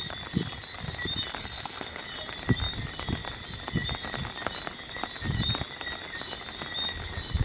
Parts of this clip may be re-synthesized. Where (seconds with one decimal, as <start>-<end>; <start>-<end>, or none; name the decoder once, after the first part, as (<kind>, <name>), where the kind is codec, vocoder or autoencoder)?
1.4-2.0 (codec, SNAC)